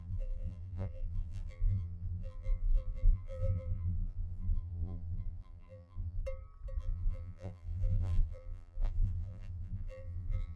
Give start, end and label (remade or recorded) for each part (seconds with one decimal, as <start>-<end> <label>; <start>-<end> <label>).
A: 0.0-6.2 remade; 6.2-6.8 recorded; 6.8-10.6 remade